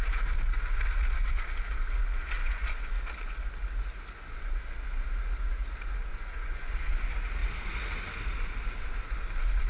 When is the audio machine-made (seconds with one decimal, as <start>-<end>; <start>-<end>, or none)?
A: 2.4-2.9; 6.1-6.7